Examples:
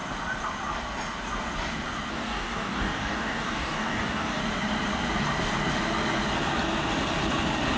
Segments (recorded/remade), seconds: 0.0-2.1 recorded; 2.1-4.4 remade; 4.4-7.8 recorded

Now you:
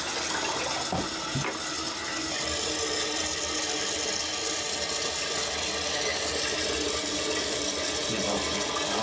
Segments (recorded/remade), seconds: 0.0-9.0 recorded

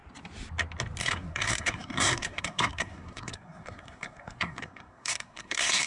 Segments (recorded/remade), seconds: 0.0-1.0 recorded; 1.0-5.9 remade

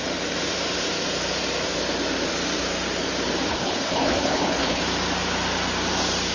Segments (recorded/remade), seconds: 0.0-3.5 recorded; 3.5-4.8 remade; 4.8-6.3 recorded

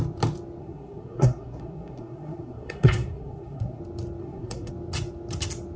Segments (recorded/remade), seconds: 0.0-0.6 recorded; 0.6-3.8 remade; 3.8-4.2 recorded; 4.2-4.7 remade; 4.7-5.8 recorded

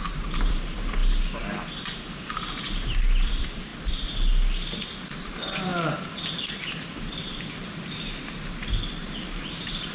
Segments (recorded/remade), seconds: 0.0-1.0 remade; 1.0-2.6 recorded; 2.6-3.7 remade; 3.7-4.4 recorded; 4.4-9.9 remade

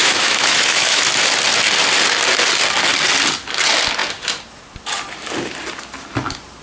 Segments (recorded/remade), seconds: 0.0-1.0 remade; 1.0-6.6 recorded

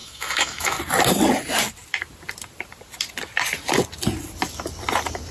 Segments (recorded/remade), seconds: 0.0-0.8 remade; 0.8-5.3 recorded